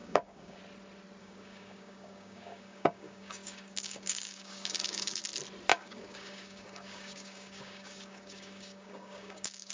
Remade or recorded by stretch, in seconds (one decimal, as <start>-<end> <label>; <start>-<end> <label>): 0.0-0.6 remade; 0.6-1.2 recorded; 1.2-5.2 remade; 5.2-5.7 recorded; 5.7-9.7 remade